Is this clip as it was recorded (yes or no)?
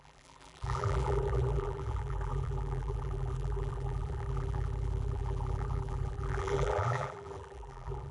no